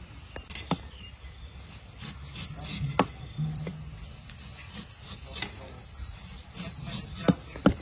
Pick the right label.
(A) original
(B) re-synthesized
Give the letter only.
A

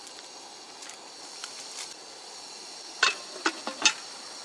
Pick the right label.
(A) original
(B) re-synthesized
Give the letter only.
A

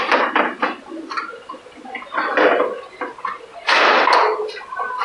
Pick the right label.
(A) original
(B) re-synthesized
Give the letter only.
A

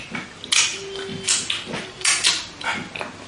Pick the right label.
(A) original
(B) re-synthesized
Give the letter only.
A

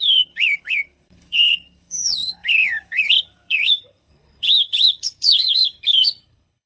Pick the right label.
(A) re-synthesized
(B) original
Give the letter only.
A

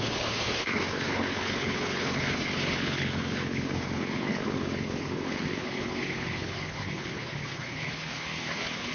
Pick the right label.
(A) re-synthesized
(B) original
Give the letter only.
A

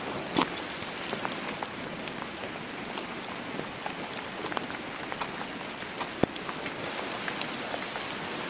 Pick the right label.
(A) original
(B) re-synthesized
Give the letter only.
A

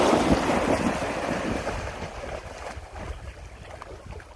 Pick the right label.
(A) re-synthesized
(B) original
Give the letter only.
B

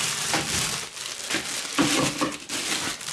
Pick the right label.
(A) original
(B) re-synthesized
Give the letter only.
A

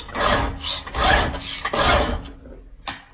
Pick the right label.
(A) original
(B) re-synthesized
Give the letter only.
A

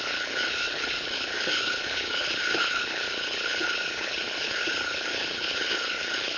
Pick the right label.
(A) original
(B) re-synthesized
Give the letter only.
B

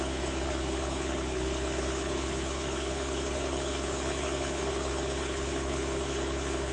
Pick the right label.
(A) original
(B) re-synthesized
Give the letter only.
B